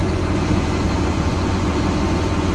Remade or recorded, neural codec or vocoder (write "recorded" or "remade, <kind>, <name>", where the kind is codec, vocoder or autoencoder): remade, vocoder, Vocos